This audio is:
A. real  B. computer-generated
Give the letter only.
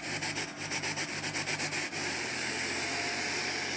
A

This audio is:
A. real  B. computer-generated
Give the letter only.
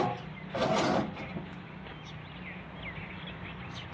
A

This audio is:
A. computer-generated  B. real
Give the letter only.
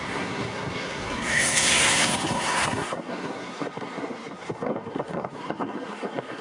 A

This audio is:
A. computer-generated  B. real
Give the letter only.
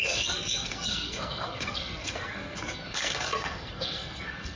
A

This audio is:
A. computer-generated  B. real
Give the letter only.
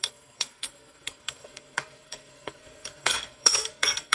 A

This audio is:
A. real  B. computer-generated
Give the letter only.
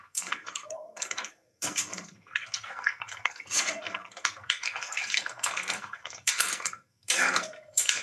B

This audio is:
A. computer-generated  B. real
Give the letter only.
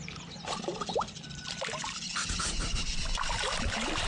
B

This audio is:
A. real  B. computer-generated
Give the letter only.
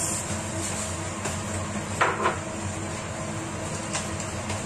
A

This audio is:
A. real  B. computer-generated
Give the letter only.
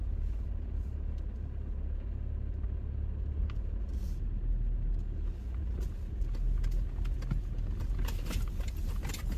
A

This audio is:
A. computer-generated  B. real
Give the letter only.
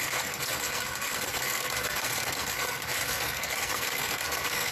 A